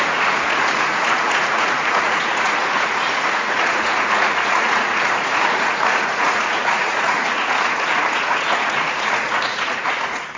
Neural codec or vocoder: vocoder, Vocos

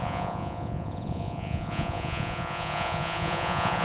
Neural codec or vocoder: vocoder, Vocos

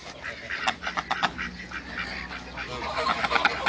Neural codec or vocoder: none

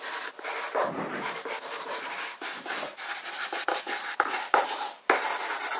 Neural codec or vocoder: none